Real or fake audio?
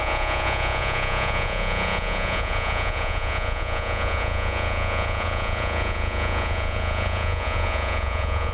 fake